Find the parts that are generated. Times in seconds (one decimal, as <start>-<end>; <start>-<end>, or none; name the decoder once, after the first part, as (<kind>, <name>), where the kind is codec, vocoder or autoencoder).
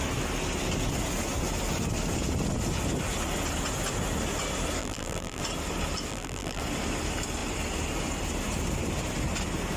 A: 4.8-5.4 (vocoder, BigVGAN v2); 6.1-6.6